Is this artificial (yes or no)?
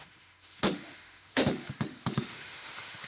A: yes